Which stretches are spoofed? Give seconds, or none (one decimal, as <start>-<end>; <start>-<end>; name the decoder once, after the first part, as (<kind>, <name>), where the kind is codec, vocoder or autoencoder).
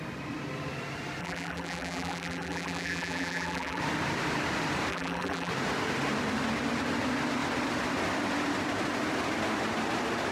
1.2-3.8 (vocoder, BigVGAN v2); 4.9-5.5